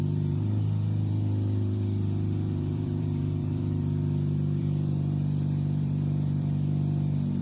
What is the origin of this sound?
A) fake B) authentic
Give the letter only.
A